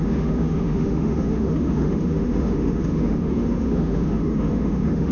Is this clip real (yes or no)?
no